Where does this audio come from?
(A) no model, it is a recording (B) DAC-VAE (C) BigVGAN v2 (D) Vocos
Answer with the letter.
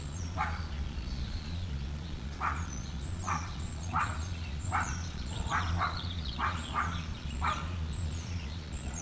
D